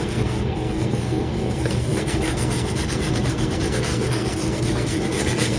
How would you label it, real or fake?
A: fake